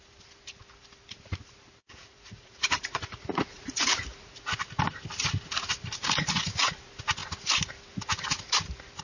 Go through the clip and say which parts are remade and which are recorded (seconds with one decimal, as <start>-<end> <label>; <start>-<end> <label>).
0.0-1.8 recorded; 1.8-4.3 remade; 4.3-9.0 recorded